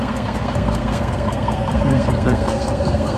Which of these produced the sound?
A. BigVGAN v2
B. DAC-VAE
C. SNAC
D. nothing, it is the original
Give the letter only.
C